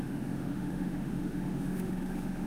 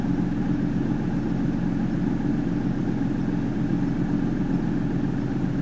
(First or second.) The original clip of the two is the second